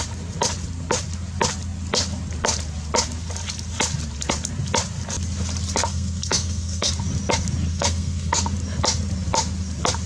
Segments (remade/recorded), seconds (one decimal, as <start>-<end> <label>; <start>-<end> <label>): 0.0-5.9 recorded; 5.9-6.9 remade; 6.9-7.7 recorded; 7.7-8.4 remade; 8.4-10.1 recorded